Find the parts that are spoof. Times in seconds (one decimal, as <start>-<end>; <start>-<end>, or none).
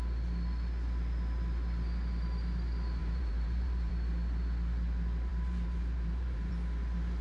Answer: 3.0-3.9; 5.3-6.5